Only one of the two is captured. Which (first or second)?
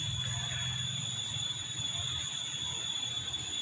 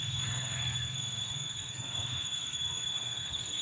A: first